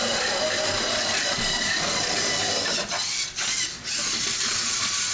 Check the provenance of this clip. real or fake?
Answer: real